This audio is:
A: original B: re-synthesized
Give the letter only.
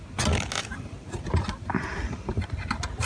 A